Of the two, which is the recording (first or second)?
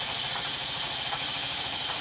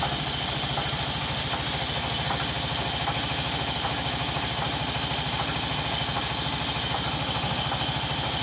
second